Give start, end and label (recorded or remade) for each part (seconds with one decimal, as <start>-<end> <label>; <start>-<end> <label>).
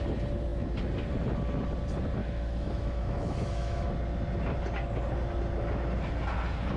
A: 0.0-2.2 recorded; 2.2-3.9 remade; 3.9-6.8 recorded